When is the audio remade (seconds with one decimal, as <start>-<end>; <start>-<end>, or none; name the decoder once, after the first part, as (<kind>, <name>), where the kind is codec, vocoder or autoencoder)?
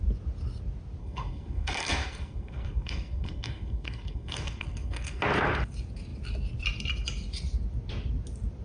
1.0-5.2 (codec, SNAC)